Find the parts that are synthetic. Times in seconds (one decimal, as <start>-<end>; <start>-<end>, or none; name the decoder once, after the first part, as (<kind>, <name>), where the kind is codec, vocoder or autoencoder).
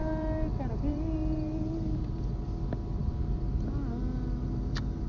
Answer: 0.0-2.0 (vocoder, BigVGAN v2)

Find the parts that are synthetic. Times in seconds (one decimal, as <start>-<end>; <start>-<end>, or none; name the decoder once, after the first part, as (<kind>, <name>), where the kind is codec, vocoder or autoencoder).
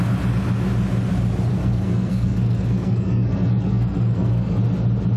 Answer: 1.5-4.6 (codec, SNAC)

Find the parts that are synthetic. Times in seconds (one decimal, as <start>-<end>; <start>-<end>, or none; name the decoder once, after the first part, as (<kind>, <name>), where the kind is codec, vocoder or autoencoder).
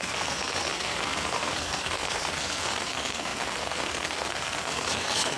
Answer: 0.0-5.4 (codec, SNAC)